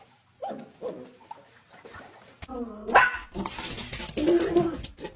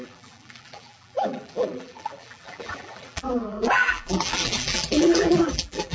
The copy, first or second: second